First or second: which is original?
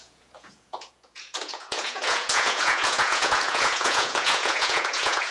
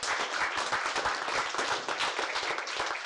second